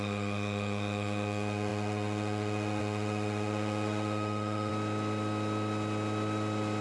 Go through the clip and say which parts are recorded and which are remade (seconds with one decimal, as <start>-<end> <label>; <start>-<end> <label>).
0.0-4.7 remade; 4.7-6.8 recorded